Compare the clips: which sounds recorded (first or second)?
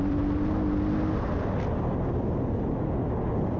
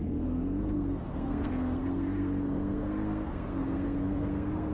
first